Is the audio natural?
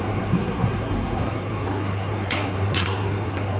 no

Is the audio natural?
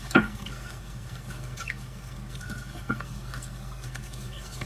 no